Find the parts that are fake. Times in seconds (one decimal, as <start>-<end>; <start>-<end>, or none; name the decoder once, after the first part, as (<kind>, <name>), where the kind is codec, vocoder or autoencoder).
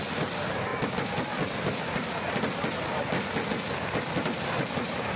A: none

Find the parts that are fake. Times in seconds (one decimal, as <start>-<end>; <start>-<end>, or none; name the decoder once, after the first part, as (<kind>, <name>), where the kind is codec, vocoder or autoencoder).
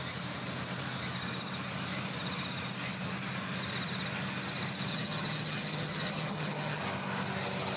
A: 4.9-6.8 (vocoder, HiFi-GAN)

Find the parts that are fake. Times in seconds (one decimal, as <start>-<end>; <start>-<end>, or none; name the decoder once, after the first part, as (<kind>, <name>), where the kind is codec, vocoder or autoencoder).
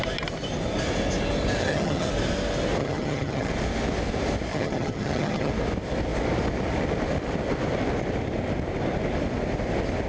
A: 1.6-2.1 (vocoder, HiFi-GAN); 2.8-3.5; 4.5-5.5